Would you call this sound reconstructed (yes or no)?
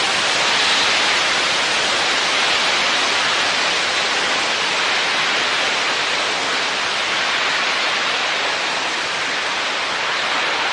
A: no